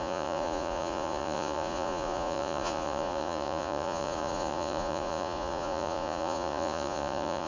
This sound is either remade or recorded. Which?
remade